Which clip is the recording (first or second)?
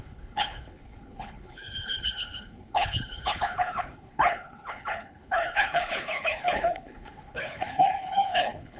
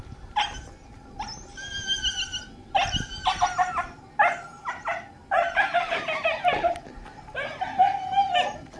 second